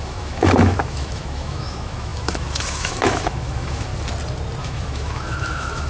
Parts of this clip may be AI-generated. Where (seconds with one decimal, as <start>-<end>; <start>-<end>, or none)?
0.0-3.9; 4.6-5.9